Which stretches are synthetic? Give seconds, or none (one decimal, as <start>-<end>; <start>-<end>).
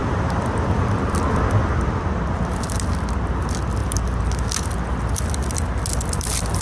0.0-3.8; 6.0-6.6